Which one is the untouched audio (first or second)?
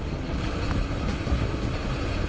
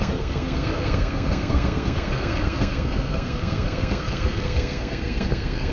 first